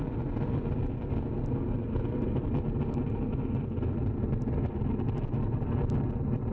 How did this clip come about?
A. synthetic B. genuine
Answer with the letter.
B